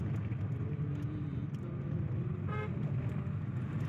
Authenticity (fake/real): real